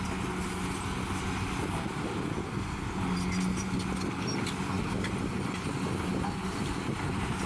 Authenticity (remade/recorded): recorded